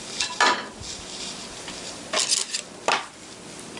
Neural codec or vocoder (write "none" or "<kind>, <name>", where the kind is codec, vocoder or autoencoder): none